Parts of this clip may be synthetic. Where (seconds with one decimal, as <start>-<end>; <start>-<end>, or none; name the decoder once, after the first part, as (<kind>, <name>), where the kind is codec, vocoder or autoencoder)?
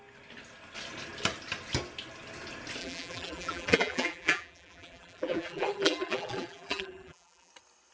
2.8-7.5 (vocoder, BigVGAN v2)